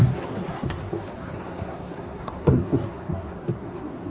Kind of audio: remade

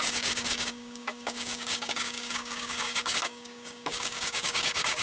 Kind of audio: remade